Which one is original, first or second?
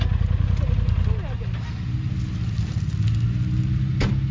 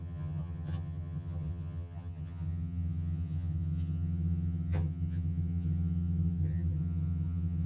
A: first